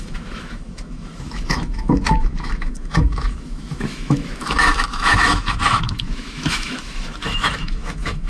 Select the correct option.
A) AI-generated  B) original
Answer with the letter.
A